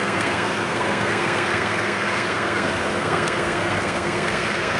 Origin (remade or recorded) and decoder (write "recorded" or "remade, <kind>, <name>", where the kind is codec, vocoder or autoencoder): remade, codec, SNAC